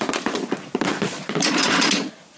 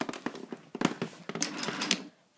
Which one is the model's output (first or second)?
first